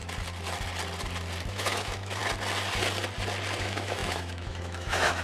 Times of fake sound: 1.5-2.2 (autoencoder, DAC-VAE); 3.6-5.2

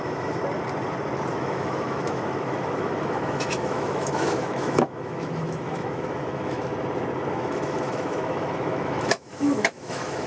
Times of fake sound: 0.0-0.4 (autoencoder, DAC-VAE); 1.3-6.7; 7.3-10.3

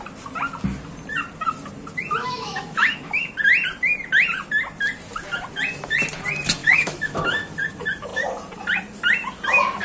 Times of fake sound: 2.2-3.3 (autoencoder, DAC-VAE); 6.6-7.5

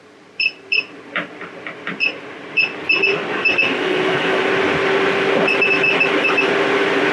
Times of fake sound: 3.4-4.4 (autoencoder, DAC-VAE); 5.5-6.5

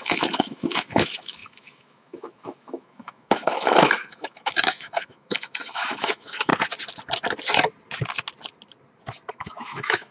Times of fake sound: 0.0-6.5 (autoencoder, DAC-VAE); 9.3-10.1

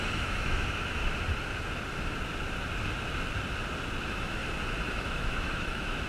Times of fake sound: 0.0-1.0 (autoencoder, DAC-VAE); 4.0-4.4; 4.9-6.1

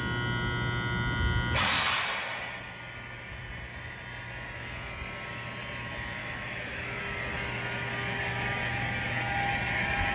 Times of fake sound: 6.2-7.0 (autoencoder, DAC-VAE)

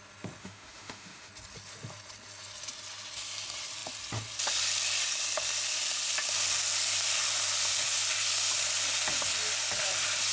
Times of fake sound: 0.4-1.3 (autoencoder, DAC-VAE)